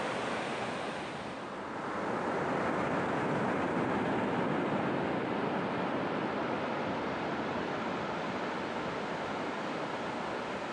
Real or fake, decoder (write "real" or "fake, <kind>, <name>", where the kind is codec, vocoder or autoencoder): real